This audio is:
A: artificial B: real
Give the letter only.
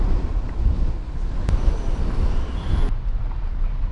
B